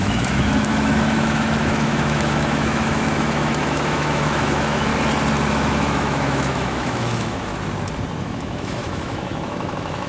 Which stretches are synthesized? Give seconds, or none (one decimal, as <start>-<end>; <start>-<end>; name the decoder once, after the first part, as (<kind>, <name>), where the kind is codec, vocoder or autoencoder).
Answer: 0.0-4.9 (autoencoder, DAC-VAE); 5.5-7.5; 8.2-10.1